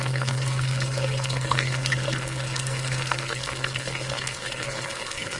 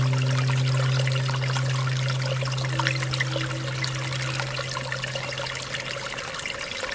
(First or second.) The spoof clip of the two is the first